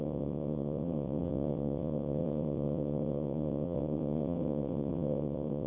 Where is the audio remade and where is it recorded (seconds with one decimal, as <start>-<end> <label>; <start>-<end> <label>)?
0.0-5.7 remade